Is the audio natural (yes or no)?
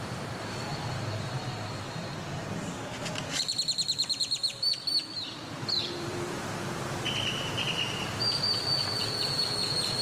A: no